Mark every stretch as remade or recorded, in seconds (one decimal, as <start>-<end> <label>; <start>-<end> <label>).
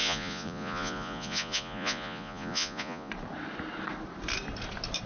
0.0-3.1 remade; 3.1-5.1 recorded